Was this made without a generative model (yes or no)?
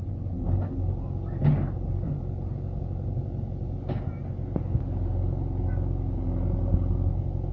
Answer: yes